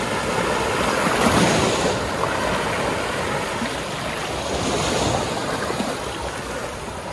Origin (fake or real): real